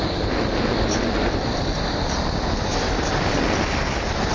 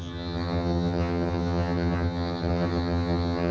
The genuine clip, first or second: first